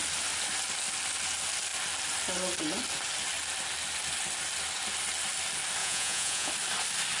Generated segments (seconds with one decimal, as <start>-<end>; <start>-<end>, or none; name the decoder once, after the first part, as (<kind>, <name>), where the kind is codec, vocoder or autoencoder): 5.8-6.5 (vocoder, Vocos)